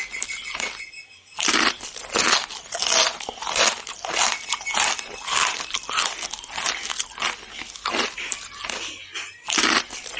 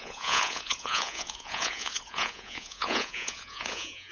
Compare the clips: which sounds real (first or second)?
first